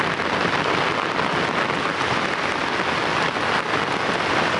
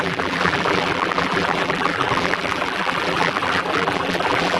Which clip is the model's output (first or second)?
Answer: second